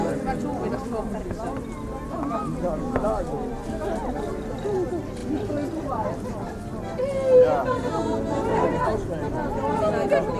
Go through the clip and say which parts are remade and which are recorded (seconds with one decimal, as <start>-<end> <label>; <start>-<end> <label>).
0.0-10.4 recorded